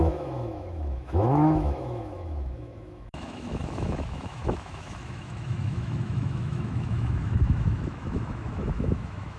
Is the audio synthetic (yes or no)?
yes